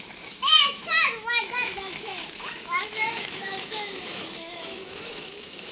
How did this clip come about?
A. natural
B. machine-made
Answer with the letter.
B